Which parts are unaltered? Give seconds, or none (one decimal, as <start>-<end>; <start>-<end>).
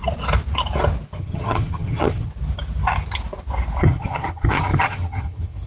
0.0-1.2; 2.3-3.8